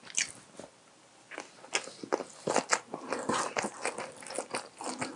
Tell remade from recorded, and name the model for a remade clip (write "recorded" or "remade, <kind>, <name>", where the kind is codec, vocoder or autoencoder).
recorded